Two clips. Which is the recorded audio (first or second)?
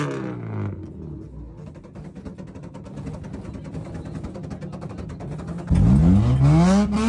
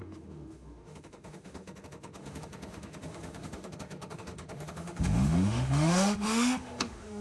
first